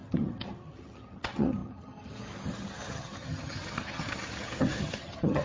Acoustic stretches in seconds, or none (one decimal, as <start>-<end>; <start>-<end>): none